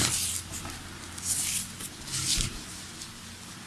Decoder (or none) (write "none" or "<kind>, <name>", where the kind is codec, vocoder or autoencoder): none